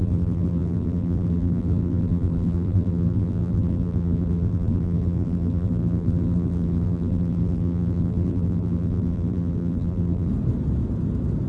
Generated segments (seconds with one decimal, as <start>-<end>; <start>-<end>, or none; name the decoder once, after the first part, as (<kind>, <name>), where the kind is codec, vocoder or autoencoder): 0.0-10.3 (vocoder, BigVGAN v2)